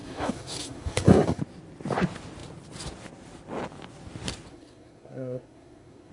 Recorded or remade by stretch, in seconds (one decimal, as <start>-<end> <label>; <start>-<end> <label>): 0.0-1.4 remade; 1.4-4.5 recorded; 4.5-6.1 remade